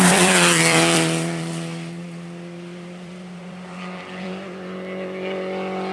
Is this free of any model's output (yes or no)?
no